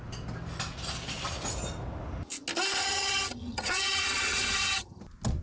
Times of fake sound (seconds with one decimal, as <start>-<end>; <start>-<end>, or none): 2.8-5.0